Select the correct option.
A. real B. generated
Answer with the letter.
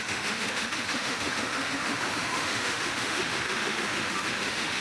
B